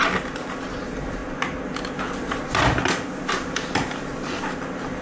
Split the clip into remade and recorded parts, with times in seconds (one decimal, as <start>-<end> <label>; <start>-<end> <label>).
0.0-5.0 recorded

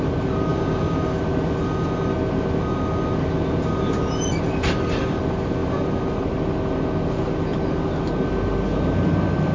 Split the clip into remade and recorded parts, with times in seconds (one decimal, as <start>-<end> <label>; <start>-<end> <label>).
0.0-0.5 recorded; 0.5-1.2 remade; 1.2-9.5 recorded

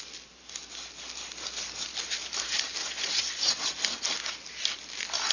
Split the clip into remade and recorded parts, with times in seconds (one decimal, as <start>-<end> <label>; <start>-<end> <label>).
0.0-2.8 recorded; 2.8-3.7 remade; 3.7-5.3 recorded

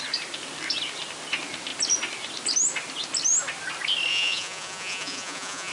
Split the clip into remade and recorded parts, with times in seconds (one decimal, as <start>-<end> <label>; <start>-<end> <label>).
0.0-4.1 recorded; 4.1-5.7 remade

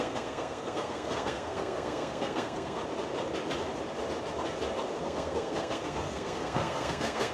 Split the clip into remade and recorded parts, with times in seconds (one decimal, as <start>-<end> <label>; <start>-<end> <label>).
0.0-2.8 remade; 2.8-5.0 recorded; 5.0-7.3 remade

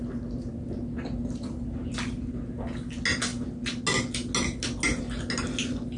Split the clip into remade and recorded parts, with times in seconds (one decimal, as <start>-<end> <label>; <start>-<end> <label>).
0.0-6.0 recorded

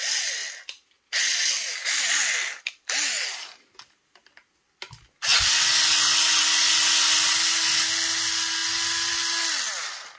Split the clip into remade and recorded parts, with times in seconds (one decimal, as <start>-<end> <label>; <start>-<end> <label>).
0.0-10.2 recorded

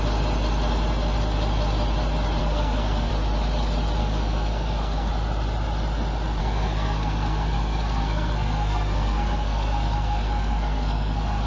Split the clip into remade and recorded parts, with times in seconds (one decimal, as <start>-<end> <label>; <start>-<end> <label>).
0.0-2.4 recorded; 2.4-3.1 remade; 3.1-4.0 recorded; 4.0-5.1 remade; 5.1-6.4 recorded; 6.4-11.5 remade